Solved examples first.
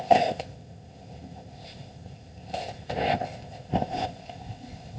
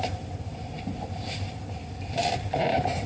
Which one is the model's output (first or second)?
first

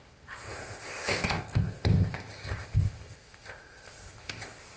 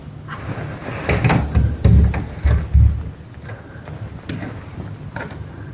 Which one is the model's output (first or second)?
first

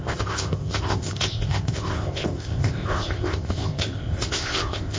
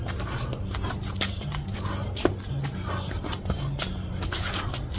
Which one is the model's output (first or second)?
first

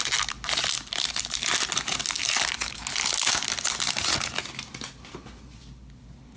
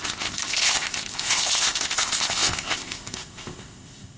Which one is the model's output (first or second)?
second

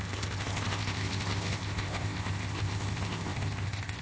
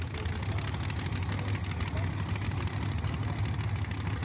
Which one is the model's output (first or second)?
first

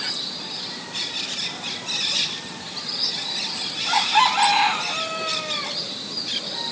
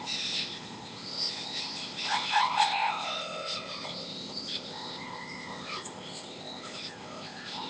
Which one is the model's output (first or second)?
second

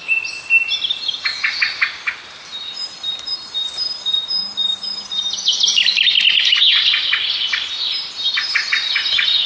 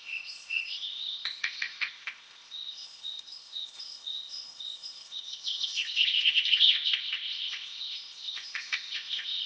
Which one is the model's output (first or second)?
second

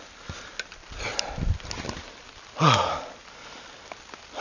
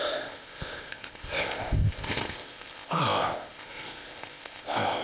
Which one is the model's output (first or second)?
second